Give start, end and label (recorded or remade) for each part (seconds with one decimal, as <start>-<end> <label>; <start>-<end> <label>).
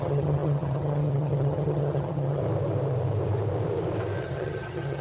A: 0.0-2.4 remade; 2.4-4.2 recorded; 4.2-5.0 remade